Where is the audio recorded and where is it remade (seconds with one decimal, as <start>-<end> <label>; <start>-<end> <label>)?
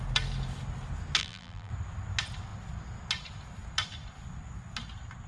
0.0-1.2 recorded; 1.2-1.7 remade; 1.7-5.3 recorded